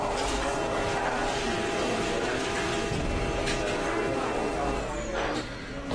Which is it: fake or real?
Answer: real